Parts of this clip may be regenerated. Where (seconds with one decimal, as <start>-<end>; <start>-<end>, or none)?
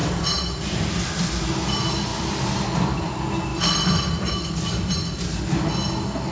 0.0-0.8; 2.1-3.1; 3.5-4.3